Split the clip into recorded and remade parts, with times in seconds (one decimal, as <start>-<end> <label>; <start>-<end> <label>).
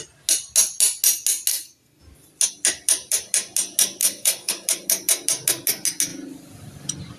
0.0-1.5 recorded; 1.5-2.0 remade; 2.0-4.0 recorded; 4.0-4.5 remade; 4.5-7.2 recorded